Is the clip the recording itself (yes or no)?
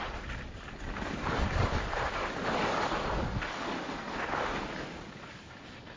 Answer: yes